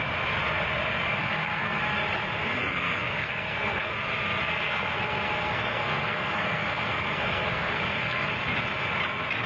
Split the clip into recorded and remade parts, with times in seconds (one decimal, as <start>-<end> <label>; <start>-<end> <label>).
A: 0.0-1.2 recorded; 1.2-1.8 remade; 1.8-2.6 recorded; 2.6-3.9 remade; 3.9-4.4 recorded; 4.4-8.3 remade; 8.3-9.5 recorded

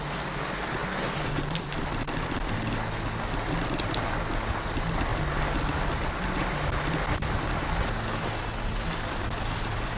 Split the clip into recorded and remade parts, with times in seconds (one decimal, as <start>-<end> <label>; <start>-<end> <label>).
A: 0.0-10.0 recorded

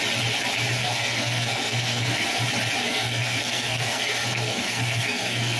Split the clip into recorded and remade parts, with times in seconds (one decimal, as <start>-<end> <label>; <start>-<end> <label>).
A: 0.0-0.8 recorded; 0.8-2.4 remade; 2.4-2.8 recorded; 2.8-5.6 remade

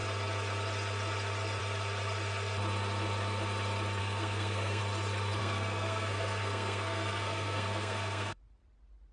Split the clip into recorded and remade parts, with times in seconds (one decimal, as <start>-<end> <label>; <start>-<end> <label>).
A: 0.0-4.0 recorded; 4.0-4.8 remade; 4.8-5.4 recorded; 5.4-8.4 remade; 8.4-9.1 recorded

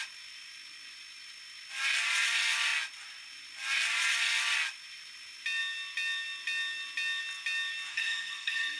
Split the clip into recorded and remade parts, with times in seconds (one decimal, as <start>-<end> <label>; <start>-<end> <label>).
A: 0.0-7.9 recorded; 7.9-8.8 remade

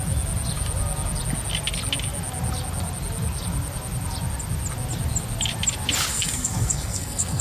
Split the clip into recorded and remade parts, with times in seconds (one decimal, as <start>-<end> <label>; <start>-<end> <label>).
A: 0.0-6.1 recorded; 6.1-7.4 remade

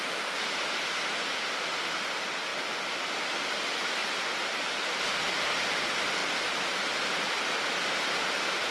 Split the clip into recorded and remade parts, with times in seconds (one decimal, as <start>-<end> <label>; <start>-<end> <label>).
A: 0.0-8.7 recorded